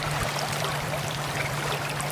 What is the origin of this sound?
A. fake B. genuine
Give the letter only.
B